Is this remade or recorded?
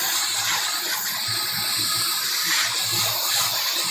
recorded